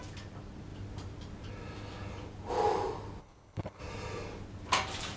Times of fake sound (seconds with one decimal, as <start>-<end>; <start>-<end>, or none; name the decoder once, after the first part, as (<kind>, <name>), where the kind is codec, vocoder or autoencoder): 3.2-3.8 (codec, HILCodec)